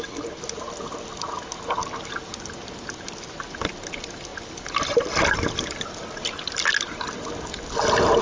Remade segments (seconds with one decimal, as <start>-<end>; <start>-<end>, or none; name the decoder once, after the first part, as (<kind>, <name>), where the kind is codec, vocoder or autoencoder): none